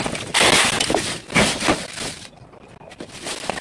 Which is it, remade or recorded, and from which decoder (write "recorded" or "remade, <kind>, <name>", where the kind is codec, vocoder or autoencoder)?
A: recorded